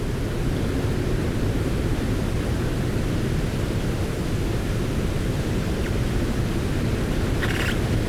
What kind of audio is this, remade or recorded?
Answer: recorded